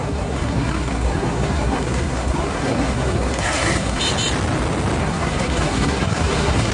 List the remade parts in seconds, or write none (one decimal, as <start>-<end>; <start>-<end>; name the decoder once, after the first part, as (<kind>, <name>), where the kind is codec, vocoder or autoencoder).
0.0-4.0 (codec, SNAC); 5.0-6.7